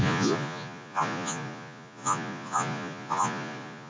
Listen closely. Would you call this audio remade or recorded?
remade